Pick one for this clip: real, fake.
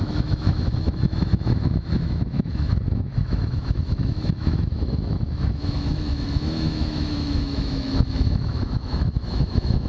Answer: fake